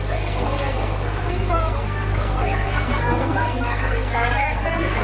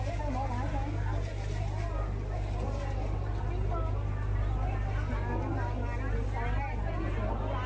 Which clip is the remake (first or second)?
first